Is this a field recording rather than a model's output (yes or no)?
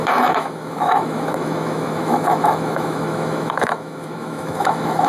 no